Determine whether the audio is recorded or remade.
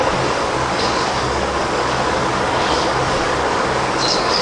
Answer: remade